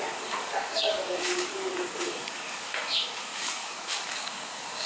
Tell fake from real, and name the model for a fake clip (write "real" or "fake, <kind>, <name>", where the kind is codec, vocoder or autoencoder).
fake, codec, DAC